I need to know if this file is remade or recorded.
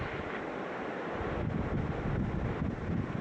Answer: recorded